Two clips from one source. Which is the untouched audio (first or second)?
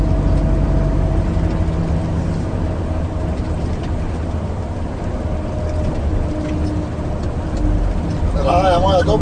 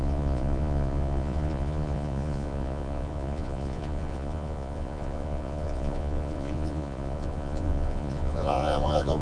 first